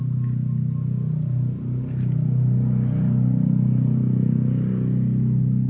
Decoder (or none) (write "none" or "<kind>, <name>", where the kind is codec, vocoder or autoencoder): none